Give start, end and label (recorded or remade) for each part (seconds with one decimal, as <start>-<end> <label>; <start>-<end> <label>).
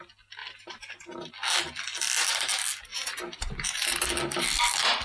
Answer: 0.0-0.4 recorded; 0.4-1.3 remade; 1.3-2.9 recorded; 2.9-4.1 remade; 4.1-5.0 recorded